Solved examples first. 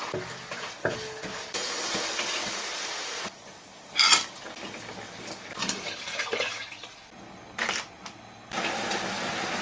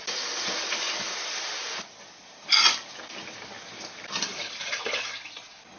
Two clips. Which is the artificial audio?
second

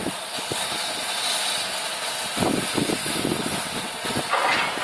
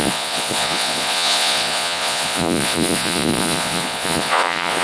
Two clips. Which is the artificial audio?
second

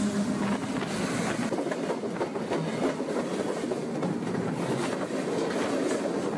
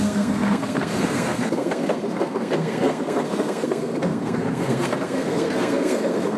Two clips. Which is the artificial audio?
second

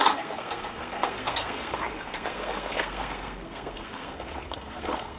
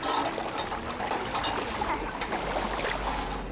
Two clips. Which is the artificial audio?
first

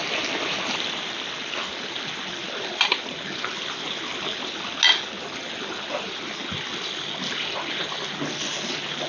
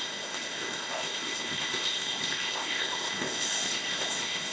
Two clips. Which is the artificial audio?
second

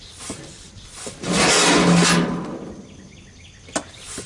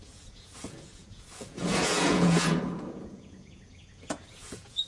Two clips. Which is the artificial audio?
second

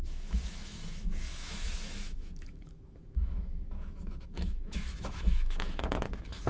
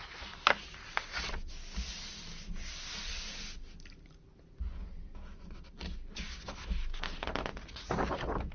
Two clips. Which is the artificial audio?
first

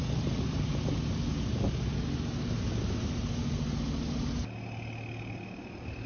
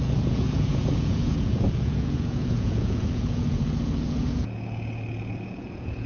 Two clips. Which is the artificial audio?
second